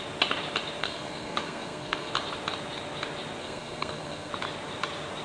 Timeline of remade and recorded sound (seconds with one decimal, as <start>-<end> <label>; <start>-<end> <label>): 0.0-0.8 recorded; 0.8-2.1 remade; 2.1-3.4 recorded; 3.4-4.3 remade; 4.3-5.2 recorded